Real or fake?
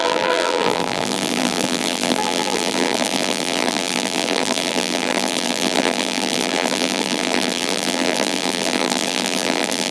fake